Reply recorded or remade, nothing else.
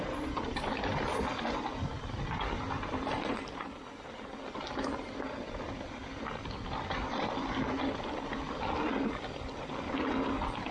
recorded